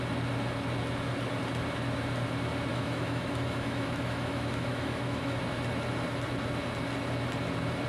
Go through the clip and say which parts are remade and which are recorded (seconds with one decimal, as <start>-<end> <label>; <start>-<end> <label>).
0.0-2.7 recorded; 2.7-5.4 remade; 5.4-7.9 recorded